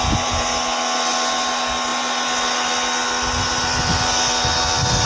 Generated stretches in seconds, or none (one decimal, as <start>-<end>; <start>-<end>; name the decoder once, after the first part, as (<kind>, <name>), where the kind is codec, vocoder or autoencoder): none